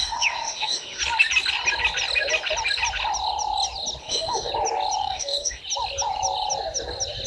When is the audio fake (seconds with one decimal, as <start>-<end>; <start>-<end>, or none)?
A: 0.0-1.0; 4.0-4.5; 5.0-5.6